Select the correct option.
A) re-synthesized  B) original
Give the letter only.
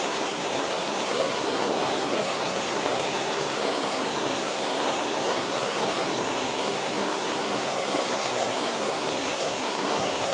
A